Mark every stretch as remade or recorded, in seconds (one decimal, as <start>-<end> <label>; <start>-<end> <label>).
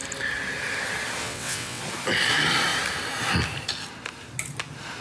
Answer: 0.0-1.2 recorded; 1.2-1.8 remade; 1.8-5.0 recorded